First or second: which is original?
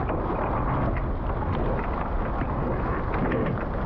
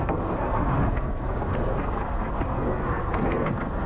first